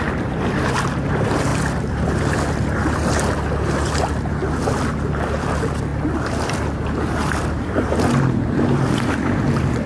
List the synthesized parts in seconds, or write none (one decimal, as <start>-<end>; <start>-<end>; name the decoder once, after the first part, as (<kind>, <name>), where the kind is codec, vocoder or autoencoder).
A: 1.5-2.2 (vocoder, BigVGAN v2)